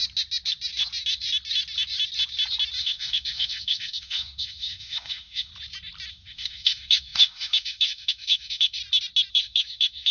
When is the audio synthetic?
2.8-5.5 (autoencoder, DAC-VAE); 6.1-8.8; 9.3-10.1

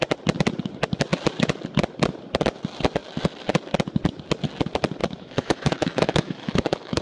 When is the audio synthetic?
5.0-7.0 (autoencoder, DAC-VAE)

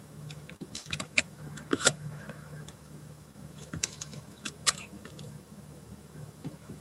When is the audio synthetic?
0.0-6.8 (autoencoder, DAC-VAE)

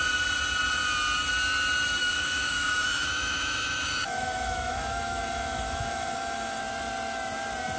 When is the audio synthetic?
2.0-6.6 (autoencoder, DAC-VAE)

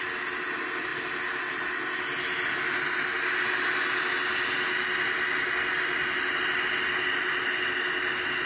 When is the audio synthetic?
none

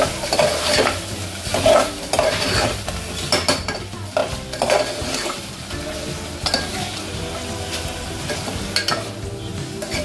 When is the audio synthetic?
none

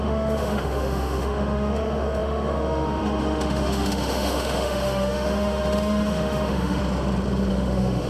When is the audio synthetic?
0.0-6.8 (autoencoder, DAC-VAE); 7.5-8.1

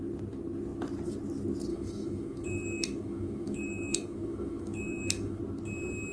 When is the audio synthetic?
1.7-5.4 (autoencoder, DAC-VAE)